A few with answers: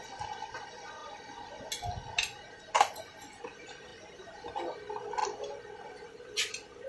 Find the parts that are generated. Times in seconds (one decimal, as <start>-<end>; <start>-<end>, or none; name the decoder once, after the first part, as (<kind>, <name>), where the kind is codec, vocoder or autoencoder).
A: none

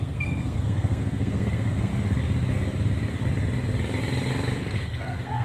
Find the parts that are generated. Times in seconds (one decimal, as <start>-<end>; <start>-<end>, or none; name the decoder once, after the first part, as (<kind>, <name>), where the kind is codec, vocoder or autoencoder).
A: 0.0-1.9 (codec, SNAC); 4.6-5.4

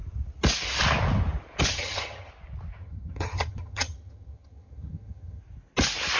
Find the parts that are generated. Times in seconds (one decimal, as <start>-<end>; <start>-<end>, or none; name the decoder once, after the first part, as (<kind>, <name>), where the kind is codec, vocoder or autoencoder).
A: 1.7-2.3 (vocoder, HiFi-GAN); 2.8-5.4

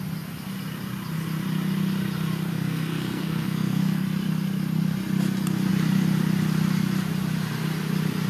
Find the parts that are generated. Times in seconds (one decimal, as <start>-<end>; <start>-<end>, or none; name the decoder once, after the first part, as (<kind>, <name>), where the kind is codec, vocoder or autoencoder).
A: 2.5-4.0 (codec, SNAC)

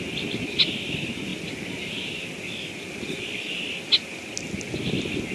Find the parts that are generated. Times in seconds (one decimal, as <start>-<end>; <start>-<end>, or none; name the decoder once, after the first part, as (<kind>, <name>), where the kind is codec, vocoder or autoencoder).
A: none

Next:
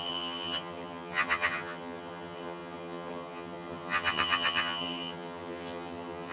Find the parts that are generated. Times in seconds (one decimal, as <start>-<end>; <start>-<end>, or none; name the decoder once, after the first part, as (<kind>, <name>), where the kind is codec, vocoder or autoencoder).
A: 0.0-6.3 (vocoder, HiFi-GAN)